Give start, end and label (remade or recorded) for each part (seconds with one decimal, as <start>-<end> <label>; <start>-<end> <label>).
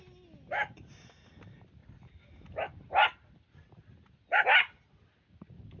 0.0-5.8 recorded